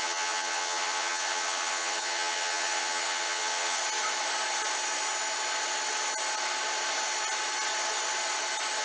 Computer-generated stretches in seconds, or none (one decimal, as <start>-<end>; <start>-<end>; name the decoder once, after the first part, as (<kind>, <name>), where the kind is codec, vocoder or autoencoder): 0.0-3.8 (vocoder, HiFi-GAN)